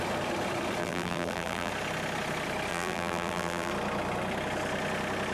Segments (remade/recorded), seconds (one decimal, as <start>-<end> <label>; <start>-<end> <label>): 0.0-0.8 recorded; 0.8-1.7 remade; 1.7-2.7 recorded; 2.7-3.7 remade; 3.7-5.3 recorded